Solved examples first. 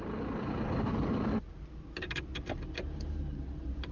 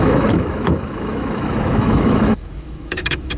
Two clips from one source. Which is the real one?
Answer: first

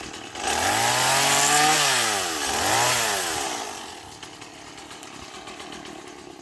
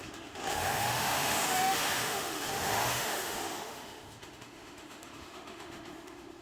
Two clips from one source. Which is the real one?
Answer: first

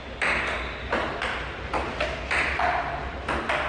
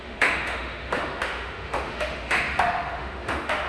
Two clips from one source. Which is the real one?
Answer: first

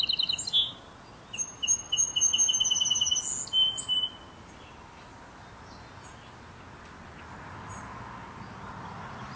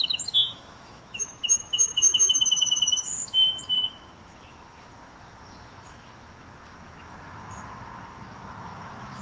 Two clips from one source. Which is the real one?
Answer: first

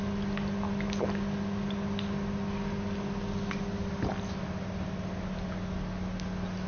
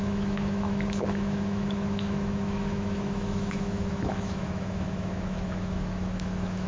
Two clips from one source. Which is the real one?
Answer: first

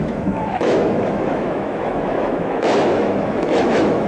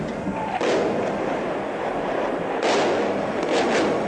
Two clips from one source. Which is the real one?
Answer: second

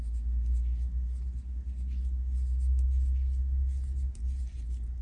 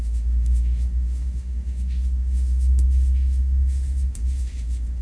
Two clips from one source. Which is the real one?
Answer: first